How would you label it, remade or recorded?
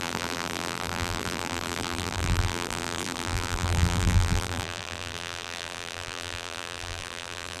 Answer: remade